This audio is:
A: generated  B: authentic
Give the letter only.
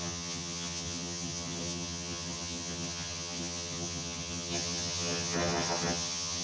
A